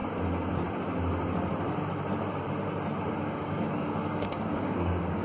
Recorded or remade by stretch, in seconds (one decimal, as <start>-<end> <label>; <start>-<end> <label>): 0.0-3.1 recorded; 3.1-5.2 remade